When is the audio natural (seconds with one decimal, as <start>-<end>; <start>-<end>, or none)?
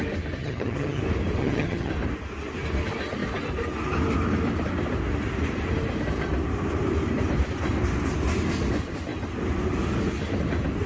0.0-0.4; 1.0-1.4; 1.9-10.9